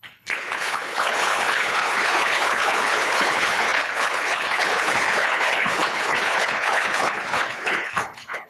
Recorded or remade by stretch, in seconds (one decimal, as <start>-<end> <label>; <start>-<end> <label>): 0.0-8.5 remade